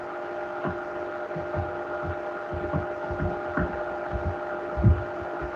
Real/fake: real